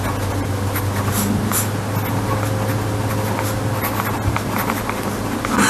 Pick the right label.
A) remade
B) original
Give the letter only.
B